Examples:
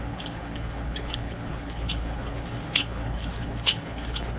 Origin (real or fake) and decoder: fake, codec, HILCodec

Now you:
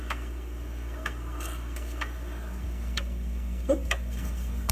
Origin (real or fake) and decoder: fake, codec, SNAC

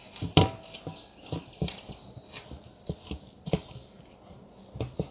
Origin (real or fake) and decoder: real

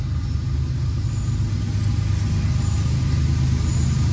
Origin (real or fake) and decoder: real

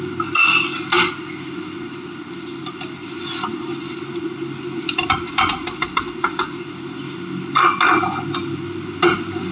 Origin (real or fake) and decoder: real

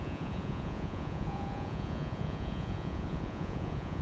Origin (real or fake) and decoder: fake, vocoder, Vocos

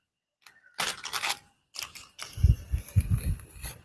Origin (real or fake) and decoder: real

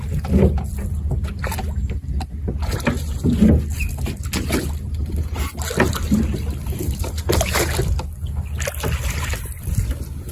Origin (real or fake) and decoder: real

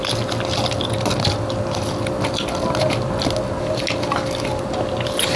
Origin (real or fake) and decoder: real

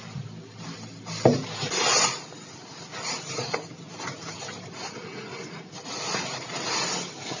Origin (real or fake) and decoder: real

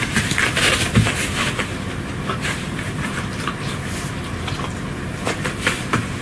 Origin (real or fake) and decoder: fake, vocoder, BigVGAN v2